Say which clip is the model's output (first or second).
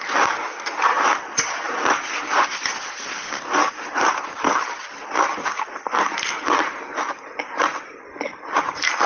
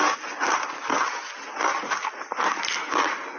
first